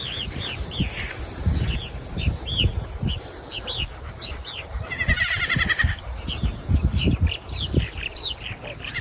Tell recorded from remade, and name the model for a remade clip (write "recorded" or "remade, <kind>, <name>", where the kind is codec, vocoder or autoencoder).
remade, vocoder, BigVGAN v2